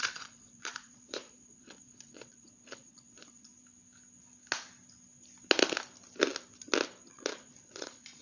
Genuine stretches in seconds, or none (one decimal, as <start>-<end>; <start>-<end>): 3.5-7.1